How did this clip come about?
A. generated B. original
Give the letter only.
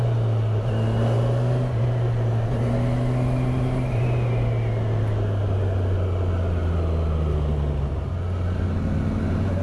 B